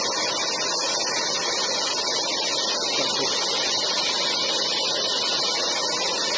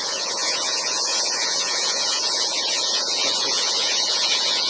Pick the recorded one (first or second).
first